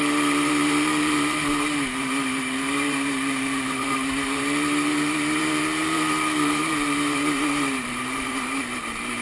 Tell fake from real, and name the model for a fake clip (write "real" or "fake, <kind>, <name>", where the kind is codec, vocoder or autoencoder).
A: fake, vocoder, BigVGAN v2